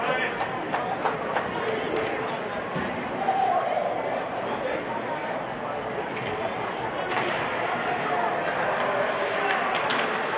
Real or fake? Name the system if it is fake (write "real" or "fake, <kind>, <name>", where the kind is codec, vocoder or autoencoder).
real